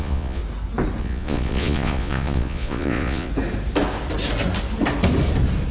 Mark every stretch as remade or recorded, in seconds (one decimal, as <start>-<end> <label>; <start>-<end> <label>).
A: 0.0-0.4 remade; 0.4-1.0 recorded; 1.0-3.3 remade; 3.3-5.7 recorded